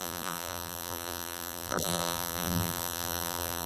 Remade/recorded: remade